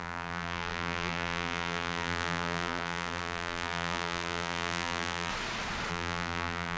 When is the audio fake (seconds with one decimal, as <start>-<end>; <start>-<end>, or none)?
0.0-5.3; 5.9-6.8